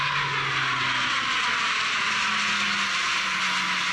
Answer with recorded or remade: recorded